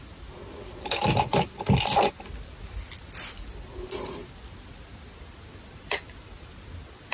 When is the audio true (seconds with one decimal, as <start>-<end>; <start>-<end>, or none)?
0.0-7.1